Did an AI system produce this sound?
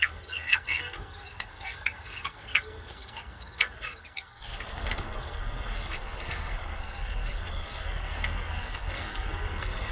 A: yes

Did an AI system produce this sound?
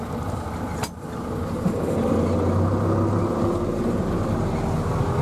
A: no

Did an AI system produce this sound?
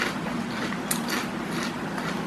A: no